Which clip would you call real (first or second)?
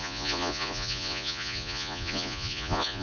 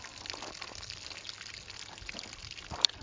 second